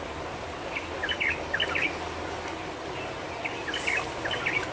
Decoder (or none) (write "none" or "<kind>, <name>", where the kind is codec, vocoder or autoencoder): none